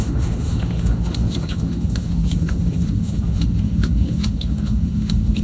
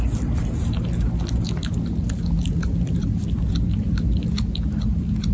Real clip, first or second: second